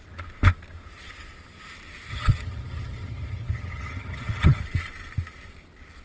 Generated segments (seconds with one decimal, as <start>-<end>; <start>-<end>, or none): 2.1-4.6